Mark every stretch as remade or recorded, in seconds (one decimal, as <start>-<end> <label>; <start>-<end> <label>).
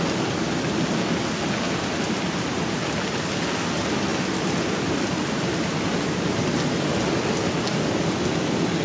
0.0-8.8 recorded